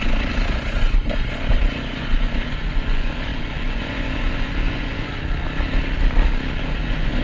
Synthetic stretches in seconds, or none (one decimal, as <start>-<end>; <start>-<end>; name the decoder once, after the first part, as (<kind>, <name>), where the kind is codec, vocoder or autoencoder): 0.0-5.1 (vocoder, Vocos); 6.6-7.2